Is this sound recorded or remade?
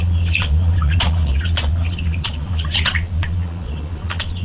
remade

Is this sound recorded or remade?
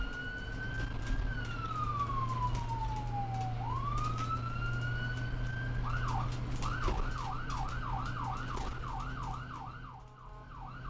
recorded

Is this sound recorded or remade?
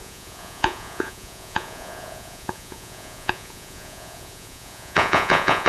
remade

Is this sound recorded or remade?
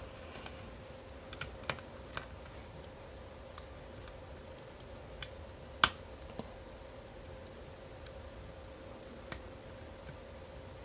recorded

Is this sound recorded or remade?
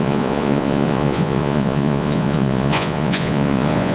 remade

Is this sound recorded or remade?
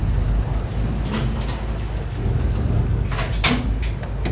recorded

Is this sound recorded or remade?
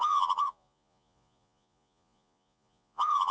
remade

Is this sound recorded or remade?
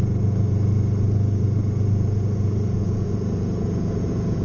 remade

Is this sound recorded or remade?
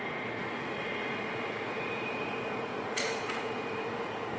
remade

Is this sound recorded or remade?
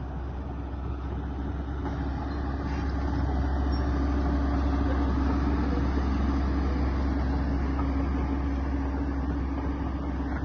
recorded